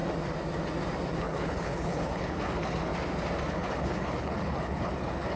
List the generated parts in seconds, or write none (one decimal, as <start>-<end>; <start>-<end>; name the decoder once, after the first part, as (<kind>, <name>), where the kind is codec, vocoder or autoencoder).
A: 1.1-2.9 (codec, HILCodec); 3.5-5.4